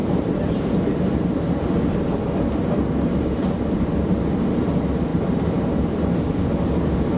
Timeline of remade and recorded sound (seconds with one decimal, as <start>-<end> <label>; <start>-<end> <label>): 0.0-1.6 remade; 1.6-5.1 recorded; 5.1-6.2 remade; 6.2-7.2 recorded